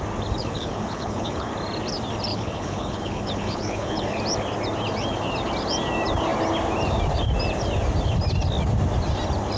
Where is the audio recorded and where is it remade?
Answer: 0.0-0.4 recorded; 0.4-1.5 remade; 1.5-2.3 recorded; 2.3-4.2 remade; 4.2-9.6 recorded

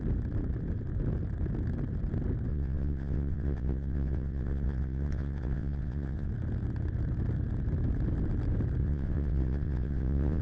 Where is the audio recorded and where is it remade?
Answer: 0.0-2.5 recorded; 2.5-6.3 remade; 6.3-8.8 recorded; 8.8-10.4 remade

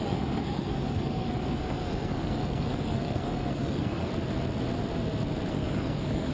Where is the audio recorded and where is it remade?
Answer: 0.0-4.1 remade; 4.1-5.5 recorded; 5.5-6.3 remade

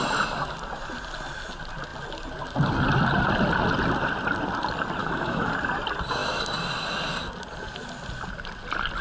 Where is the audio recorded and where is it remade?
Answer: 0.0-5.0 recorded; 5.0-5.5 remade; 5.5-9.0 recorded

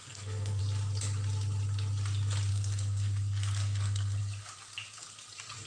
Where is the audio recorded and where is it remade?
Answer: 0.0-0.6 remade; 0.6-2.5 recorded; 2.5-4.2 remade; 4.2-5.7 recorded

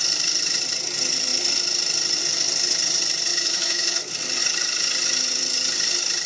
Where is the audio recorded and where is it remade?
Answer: 0.0-3.3 recorded; 3.3-4.0 remade; 4.0-6.3 recorded

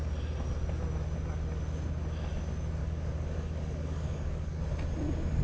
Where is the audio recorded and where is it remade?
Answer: 0.0-2.8 recorded; 2.8-4.6 remade; 4.6-5.4 recorded

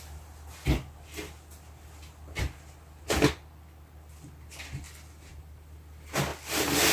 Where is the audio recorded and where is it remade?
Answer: 0.0-6.9 recorded